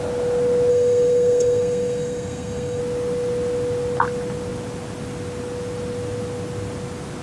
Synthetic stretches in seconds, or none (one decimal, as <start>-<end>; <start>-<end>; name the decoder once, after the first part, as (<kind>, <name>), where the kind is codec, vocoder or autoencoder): 0.7-2.8 (codec, SNAC)